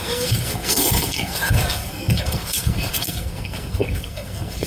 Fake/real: fake